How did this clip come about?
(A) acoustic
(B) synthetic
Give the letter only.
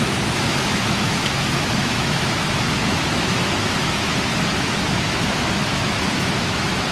B